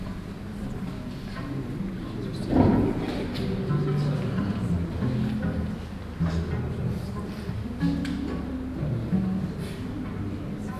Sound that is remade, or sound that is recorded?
recorded